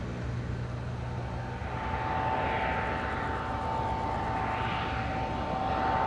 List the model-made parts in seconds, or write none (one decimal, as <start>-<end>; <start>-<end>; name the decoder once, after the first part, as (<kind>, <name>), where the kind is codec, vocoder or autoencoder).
none